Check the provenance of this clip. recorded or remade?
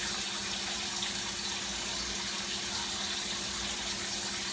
recorded